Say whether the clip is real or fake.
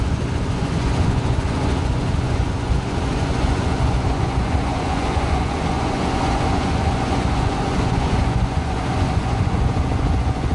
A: fake